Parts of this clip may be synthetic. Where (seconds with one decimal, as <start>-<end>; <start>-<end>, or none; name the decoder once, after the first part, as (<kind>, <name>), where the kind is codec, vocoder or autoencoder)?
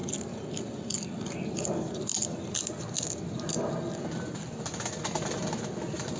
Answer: none